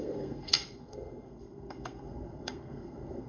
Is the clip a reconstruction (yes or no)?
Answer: yes